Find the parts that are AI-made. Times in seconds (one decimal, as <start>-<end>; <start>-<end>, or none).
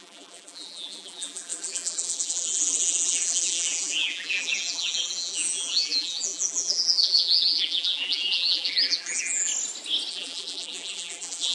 0.0-9.5; 10.1-11.5